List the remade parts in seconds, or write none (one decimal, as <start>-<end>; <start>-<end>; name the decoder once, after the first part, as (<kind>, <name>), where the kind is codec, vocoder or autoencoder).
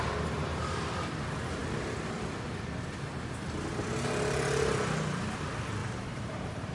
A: 5.8-6.7 (vocoder, BigVGAN v2)